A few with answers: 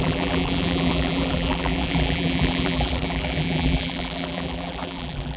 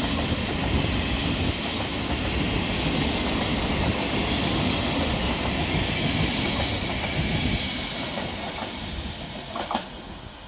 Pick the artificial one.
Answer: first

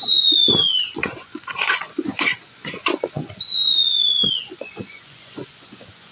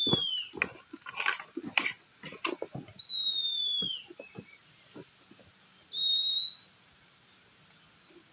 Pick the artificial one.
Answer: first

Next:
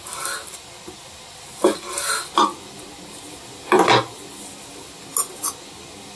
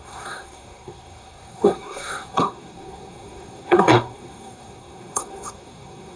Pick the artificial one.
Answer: second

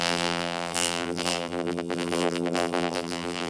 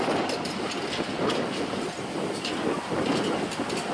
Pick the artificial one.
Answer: first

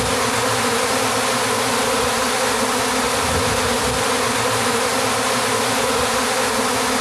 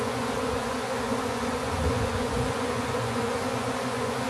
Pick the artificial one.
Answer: second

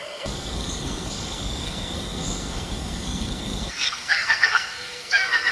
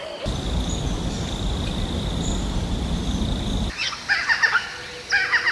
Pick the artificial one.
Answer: first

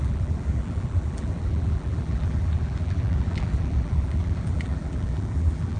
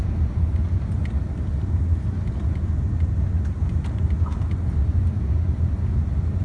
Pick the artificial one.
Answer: first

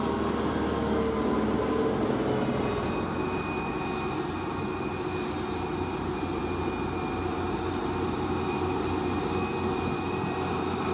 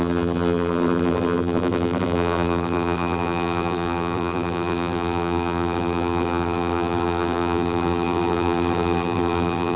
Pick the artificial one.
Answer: second